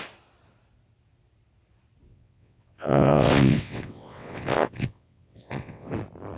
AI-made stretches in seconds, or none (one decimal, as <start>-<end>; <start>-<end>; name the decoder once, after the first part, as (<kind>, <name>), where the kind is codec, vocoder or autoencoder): 2.1-5.9 (vocoder, WaveNeXt)

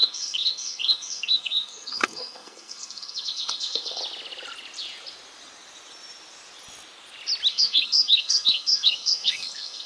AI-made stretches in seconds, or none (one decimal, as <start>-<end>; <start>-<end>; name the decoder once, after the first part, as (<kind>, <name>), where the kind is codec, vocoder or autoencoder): 0.0-4.0 (codec, SNAC); 7.5-9.9

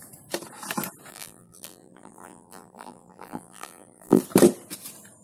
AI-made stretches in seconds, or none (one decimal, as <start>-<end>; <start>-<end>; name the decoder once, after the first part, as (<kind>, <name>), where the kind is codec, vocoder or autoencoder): 1.1-4.2 (vocoder, BigVGAN v2)

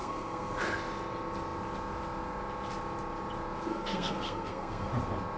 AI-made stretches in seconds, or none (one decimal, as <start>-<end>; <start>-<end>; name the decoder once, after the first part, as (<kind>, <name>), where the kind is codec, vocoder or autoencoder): 0.0-0.6 (codec, SNAC); 3.7-4.9

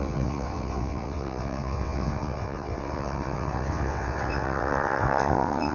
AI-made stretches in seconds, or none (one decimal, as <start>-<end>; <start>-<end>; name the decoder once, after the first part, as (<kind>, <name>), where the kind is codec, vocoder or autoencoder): 0.0-5.7 (vocoder, WaveNeXt)

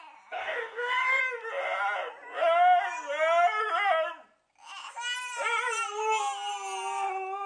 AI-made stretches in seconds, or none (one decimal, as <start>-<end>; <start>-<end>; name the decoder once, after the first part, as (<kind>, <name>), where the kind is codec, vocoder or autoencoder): 0.4-1.2 (codec, DAC)